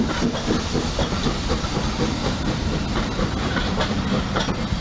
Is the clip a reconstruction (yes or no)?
no